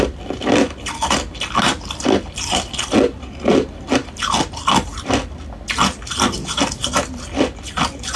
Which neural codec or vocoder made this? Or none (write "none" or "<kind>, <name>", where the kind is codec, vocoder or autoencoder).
none